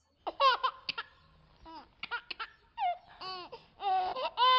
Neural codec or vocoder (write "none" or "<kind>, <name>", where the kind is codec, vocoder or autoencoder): none